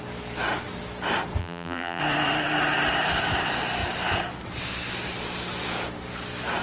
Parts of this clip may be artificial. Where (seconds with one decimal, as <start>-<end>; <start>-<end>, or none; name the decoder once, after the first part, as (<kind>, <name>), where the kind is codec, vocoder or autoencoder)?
1.4-2.0 (vocoder, BigVGAN v2)